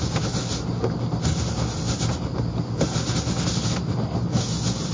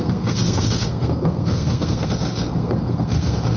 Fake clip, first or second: second